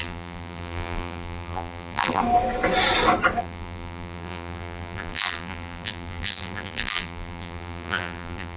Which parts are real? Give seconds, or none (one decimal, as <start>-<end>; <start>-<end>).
2.2-3.4